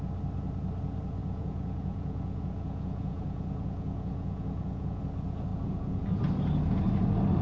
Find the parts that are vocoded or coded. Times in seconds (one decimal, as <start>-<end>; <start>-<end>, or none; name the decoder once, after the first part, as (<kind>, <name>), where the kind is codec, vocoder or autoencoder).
1.2-5.0 (vocoder, Vocos); 5.5-6.2